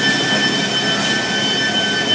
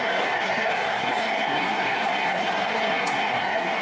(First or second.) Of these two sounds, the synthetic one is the second